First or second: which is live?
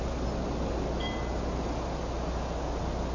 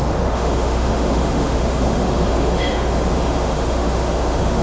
first